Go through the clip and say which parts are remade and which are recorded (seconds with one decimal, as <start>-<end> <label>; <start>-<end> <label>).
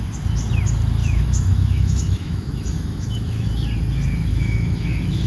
0.0-1.0 recorded; 1.0-3.5 remade; 3.5-4.3 recorded; 4.3-5.3 remade